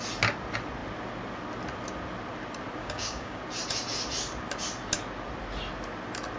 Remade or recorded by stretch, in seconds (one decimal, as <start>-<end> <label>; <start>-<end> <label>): 0.0-2.8 recorded; 2.8-3.4 remade; 3.4-6.4 recorded